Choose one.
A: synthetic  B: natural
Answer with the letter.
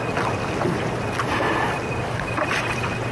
B